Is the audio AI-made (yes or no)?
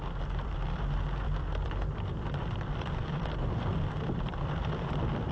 yes